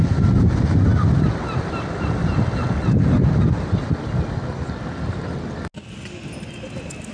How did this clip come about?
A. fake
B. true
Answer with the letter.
B